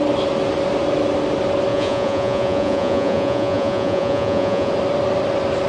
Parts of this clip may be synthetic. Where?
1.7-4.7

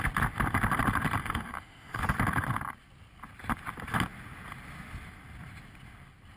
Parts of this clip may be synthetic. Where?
1.2-2.0